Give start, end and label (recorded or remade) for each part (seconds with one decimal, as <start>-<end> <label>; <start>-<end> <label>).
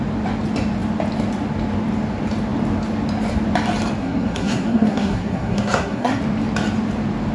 0.0-4.0 recorded; 4.0-6.2 remade; 6.2-7.3 recorded